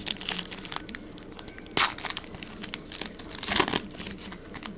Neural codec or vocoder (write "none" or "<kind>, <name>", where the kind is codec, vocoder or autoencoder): none